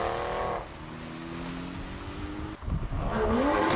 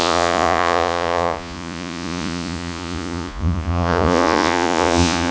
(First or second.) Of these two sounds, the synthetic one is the second